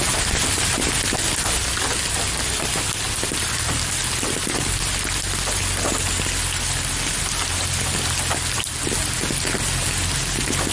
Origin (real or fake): real